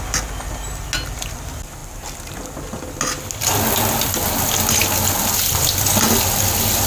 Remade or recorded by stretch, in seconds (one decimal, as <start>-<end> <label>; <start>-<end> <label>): 0.0-6.9 recorded